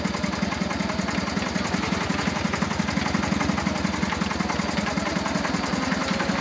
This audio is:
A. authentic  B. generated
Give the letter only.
A